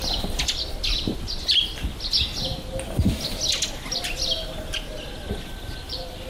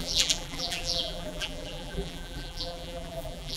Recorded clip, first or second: first